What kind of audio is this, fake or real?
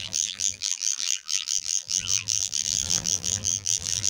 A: fake